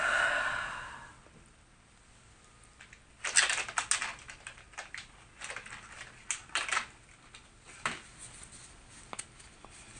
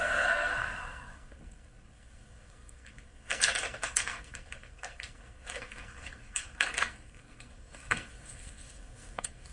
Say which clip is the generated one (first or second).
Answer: second